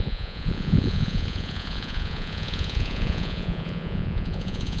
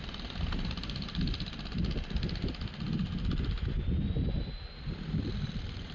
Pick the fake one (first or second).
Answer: first